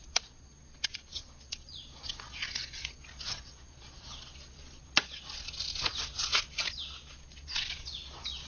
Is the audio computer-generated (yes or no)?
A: yes